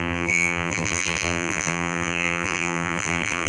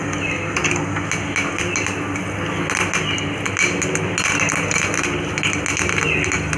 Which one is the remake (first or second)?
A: first